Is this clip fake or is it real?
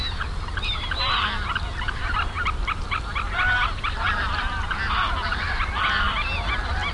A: real